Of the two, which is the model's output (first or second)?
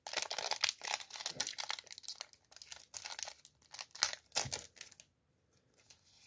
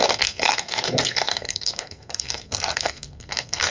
second